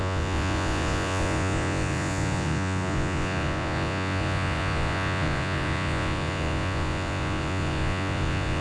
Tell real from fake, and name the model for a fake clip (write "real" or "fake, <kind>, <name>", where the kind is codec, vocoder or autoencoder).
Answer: fake, vocoder, Vocos